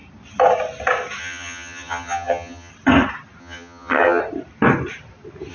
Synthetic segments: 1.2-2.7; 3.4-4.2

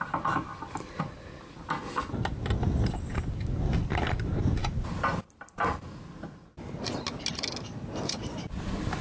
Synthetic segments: none

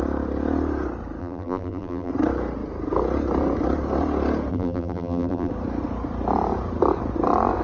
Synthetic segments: 1.2-2.1; 4.5-5.5

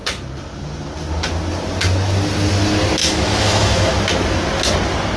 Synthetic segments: 3.0-3.9

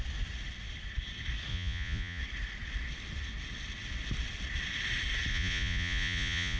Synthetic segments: 1.5-2.2; 5.3-6.6

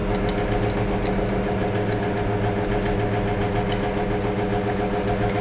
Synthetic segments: none

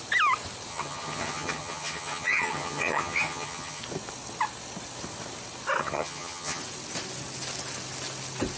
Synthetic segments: 0.7-3.8; 5.8-6.6

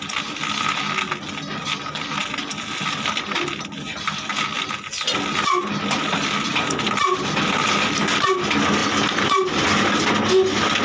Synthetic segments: none